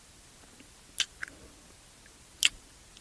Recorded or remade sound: recorded